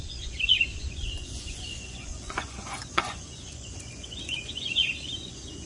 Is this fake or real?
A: fake